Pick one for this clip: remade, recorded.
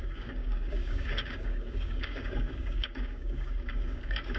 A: remade